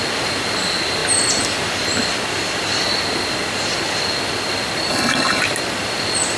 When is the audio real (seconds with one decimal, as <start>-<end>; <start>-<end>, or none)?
0.0-4.9; 5.4-6.4